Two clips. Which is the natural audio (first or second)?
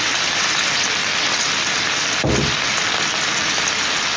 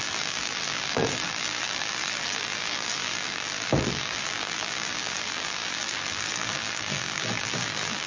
first